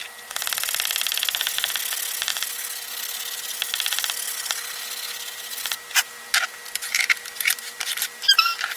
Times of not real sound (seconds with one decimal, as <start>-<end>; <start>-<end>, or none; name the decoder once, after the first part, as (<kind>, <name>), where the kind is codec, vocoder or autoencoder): none

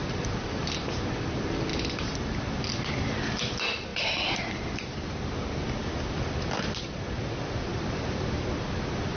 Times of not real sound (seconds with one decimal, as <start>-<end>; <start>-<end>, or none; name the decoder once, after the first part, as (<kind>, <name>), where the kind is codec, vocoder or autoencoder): 3.9-5.3 (vocoder, BigVGAN v2); 7.7-8.4

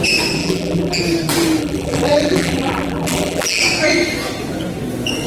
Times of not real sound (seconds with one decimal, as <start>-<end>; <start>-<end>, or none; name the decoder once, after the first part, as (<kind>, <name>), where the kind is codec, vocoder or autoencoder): 0.4-1.0 (vocoder, BigVGAN v2); 1.6-3.6

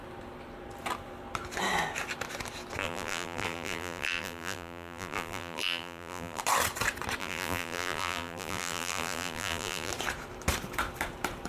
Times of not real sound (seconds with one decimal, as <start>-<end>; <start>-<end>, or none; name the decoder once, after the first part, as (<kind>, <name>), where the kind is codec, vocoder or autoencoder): 2.8-6.4 (vocoder, BigVGAN v2); 7.2-9.9